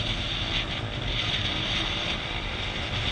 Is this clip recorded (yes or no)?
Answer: yes